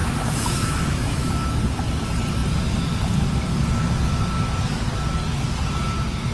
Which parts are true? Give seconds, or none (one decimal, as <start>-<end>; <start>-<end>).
1.3-6.3